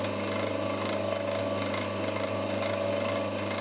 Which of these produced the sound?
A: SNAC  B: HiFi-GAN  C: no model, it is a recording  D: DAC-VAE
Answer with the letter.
C